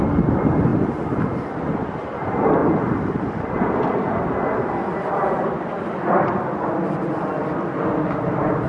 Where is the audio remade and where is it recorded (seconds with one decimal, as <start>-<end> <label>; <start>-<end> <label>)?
0.0-8.7 recorded